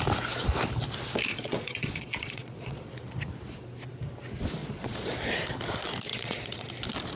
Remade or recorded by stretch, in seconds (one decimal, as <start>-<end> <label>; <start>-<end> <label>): 0.0-1.3 recorded; 1.3-2.9 remade; 2.9-4.6 recorded; 4.6-5.3 remade; 5.3-6.1 recorded; 6.1-6.7 remade; 6.7-7.2 recorded

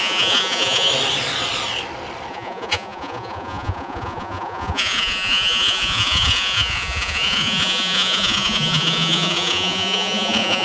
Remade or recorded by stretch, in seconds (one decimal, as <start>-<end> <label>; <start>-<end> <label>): 0.0-0.9 remade; 0.9-2.3 recorded; 2.3-10.6 remade